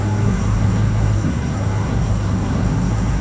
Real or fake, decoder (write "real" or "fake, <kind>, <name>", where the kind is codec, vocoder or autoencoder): fake, codec, SNAC